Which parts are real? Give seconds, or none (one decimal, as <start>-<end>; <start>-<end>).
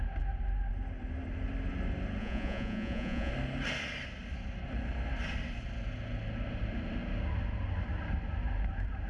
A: 0.0-2.2; 3.3-9.1